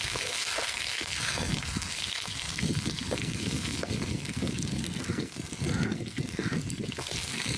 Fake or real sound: fake